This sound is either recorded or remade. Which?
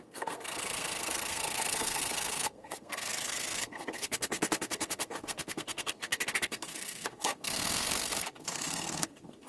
remade